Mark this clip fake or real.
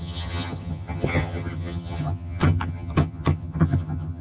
fake